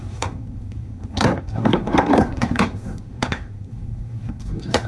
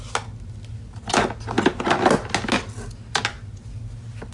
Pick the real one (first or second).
second